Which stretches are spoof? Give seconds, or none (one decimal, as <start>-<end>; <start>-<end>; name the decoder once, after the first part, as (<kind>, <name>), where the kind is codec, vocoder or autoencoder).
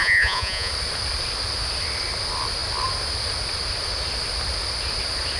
0.0-0.7 (vocoder, Vocos)